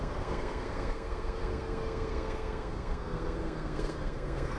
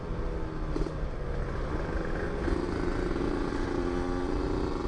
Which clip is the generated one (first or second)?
first